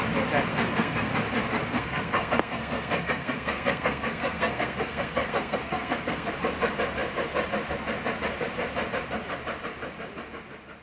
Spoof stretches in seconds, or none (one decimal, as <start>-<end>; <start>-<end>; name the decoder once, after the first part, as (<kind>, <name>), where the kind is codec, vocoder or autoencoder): 0.5-1.1 (codec, SNAC); 1.6-6.3